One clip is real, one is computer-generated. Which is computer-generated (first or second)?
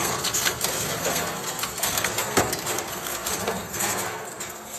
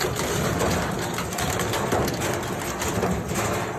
first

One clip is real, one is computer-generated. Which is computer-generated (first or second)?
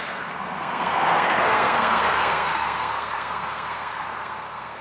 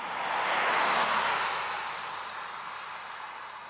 first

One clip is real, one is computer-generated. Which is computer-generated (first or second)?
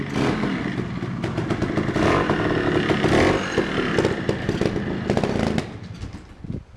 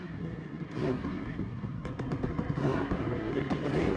second